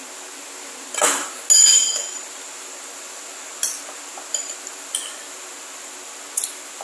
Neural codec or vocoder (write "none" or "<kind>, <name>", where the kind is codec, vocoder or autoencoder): none